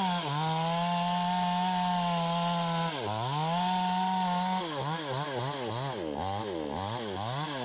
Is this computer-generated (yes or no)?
no